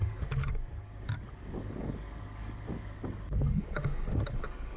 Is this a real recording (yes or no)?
no